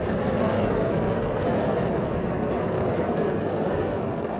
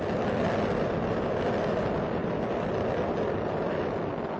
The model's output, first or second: first